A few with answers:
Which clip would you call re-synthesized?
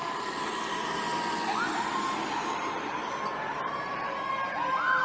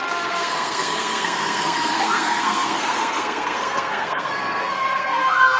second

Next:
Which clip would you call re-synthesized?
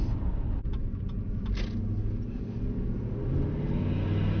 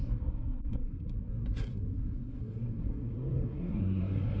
second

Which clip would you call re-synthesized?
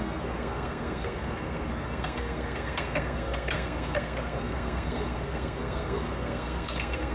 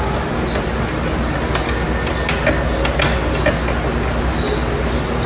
first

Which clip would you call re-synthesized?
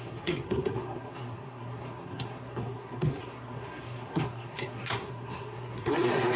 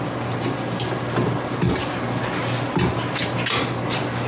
first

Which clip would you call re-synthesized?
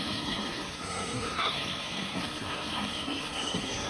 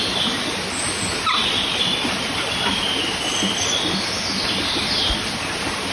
first